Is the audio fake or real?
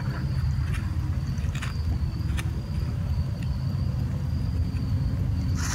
real